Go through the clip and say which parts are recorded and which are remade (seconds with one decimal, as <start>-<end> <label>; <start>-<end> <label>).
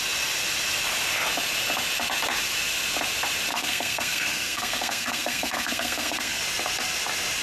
0.0-3.5 recorded; 3.5-6.4 remade; 6.4-7.4 recorded